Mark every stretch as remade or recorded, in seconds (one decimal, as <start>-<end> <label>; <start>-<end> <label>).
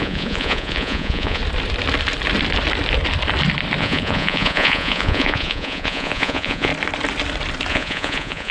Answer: 0.0-1.4 remade; 1.4-3.8 recorded; 3.8-6.7 remade; 6.7-7.7 recorded; 7.7-8.5 remade